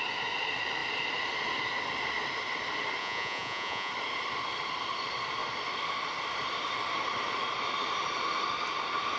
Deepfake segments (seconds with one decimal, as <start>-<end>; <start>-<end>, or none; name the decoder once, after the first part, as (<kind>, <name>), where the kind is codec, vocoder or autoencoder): 3.0-3.9 (vocoder, Vocos)